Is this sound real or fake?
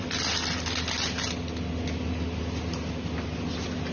real